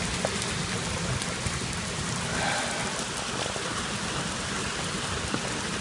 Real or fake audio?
real